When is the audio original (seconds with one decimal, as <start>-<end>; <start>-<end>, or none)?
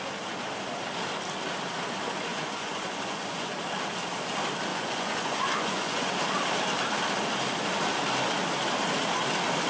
0.0-2.3; 3.5-4.7; 6.1-9.7